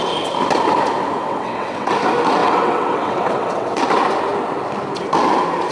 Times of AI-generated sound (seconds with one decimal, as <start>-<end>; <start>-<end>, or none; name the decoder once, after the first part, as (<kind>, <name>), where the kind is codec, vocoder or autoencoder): 1.2-1.9 (vocoder, WaveNeXt); 2.4-3.8